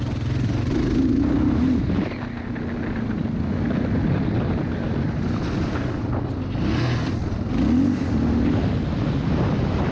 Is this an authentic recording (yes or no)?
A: yes